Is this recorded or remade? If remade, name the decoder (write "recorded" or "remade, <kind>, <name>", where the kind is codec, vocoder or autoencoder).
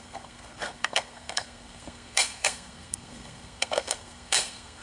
remade, codec, SNAC